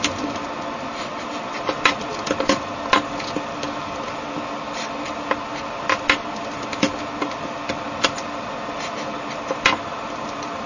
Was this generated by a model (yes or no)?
no